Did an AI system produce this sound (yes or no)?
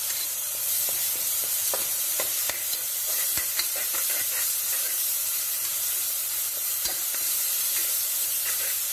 yes